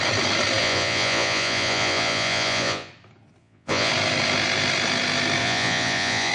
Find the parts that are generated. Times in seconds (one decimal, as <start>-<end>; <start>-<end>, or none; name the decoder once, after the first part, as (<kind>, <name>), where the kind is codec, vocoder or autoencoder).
0.6-2.9 (vocoder, Vocos); 3.4-3.9; 5.4-6.3